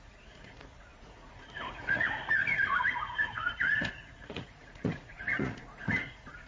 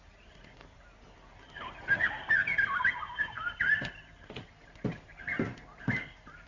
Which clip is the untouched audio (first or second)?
second